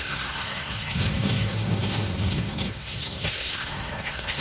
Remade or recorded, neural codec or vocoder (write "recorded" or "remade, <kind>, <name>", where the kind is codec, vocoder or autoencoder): remade, codec, SNAC